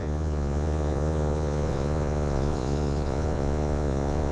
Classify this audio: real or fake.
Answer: fake